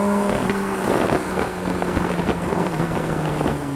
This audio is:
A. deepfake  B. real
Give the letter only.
A